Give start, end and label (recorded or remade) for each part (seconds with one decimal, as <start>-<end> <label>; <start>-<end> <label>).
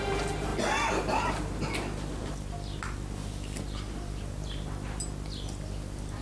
0.0-6.2 recorded